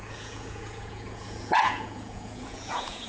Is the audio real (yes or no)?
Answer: no